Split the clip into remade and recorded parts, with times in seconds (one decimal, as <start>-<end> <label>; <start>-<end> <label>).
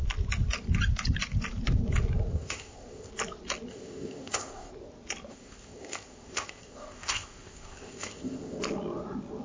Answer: 0.0-2.3 recorded; 2.3-3.1 remade; 3.1-3.7 recorded; 3.7-4.7 remade; 4.7-5.3 recorded; 5.3-8.6 remade; 8.6-9.4 recorded